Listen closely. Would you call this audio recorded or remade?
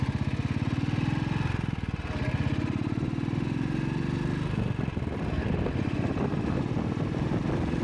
recorded